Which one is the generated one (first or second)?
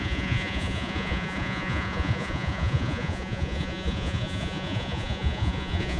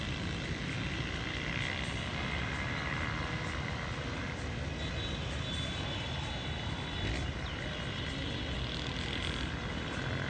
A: first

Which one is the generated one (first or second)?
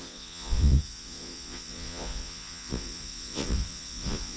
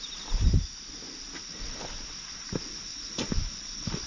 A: first